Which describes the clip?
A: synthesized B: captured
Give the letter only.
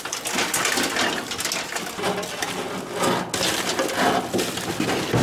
B